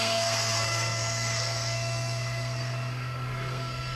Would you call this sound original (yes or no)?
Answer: no